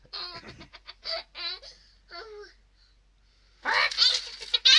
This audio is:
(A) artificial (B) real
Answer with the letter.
B